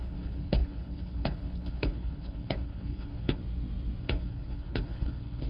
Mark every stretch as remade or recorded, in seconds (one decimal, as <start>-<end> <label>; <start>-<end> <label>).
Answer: 0.0-3.4 remade; 3.4-4.0 recorded; 4.0-5.5 remade